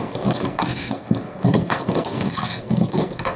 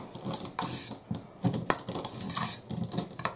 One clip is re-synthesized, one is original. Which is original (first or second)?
second